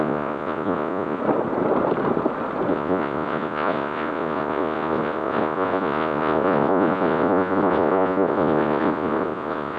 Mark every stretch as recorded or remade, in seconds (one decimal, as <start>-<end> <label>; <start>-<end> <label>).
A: 0.0-1.2 remade; 1.2-2.7 recorded; 2.7-9.8 remade